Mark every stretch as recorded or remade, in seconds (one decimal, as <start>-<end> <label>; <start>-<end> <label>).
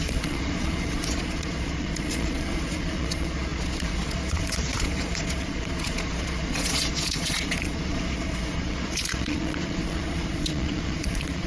0.0-11.5 remade